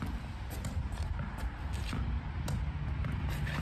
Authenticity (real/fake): real